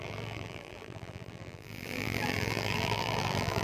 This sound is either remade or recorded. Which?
remade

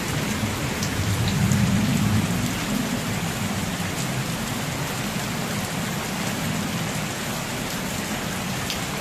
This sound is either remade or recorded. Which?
remade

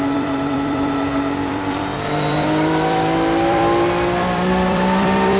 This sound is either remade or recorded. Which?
remade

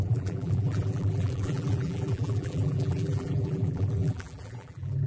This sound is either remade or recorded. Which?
remade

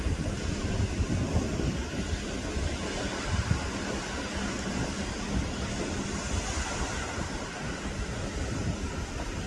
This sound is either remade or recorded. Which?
recorded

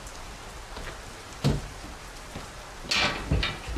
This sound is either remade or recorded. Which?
recorded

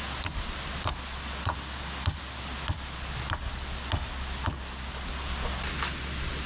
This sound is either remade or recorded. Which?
recorded